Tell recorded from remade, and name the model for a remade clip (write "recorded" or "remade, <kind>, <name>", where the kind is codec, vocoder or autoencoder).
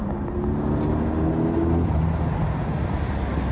recorded